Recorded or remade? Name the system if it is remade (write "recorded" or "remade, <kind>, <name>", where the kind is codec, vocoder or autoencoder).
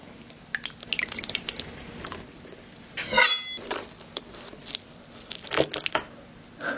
recorded